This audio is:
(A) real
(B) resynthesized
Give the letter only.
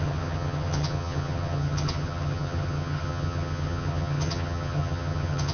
B